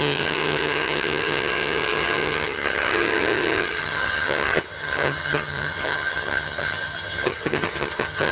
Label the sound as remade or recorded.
remade